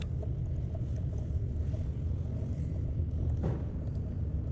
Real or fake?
real